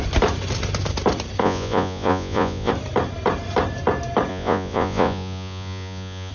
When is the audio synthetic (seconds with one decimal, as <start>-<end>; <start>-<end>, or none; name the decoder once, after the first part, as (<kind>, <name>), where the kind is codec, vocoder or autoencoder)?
1.4-2.7 (vocoder, Vocos); 4.3-6.3